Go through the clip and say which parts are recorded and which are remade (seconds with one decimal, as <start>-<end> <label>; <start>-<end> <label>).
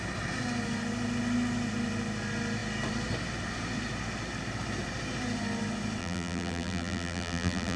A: 0.0-6.0 recorded; 6.0-7.8 remade